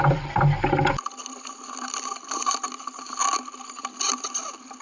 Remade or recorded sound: recorded